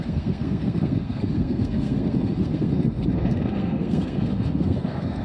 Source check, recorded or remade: remade